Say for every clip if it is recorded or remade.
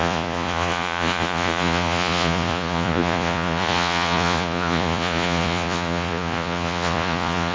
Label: remade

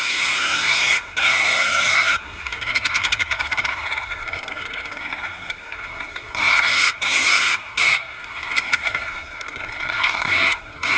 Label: remade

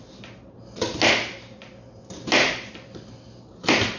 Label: recorded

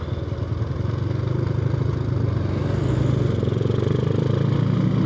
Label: recorded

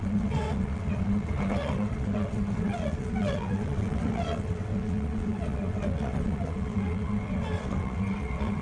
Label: remade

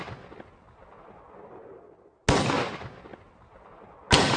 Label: recorded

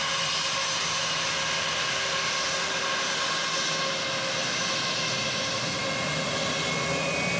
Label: recorded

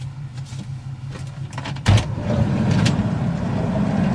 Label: remade